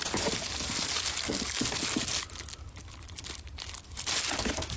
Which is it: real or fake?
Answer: real